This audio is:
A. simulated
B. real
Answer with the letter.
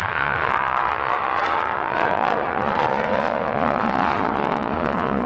A